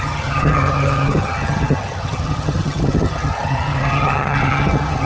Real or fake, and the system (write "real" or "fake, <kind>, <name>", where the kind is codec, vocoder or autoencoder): fake, vocoder, HiFi-GAN